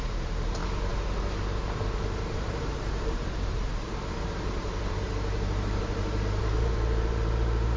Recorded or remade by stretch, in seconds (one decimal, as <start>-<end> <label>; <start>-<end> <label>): 0.0-0.6 remade; 0.6-1.6 recorded; 1.6-7.8 remade